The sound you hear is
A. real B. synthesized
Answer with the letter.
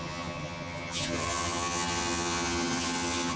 B